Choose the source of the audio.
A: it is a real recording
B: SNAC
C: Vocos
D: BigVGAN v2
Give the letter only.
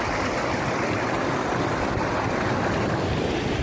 A